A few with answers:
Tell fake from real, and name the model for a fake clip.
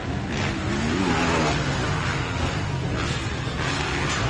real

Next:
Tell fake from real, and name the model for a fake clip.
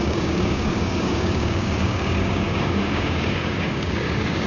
fake, codec, DAC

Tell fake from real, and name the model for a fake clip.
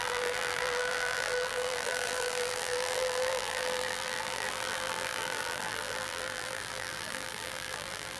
fake, vocoder, BigVGAN v2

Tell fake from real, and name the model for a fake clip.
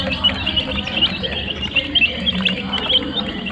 real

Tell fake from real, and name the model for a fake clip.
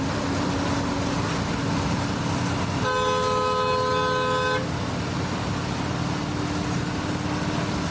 real